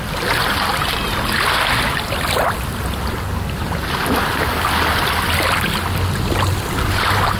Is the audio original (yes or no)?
yes